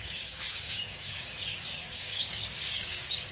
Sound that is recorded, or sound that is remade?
remade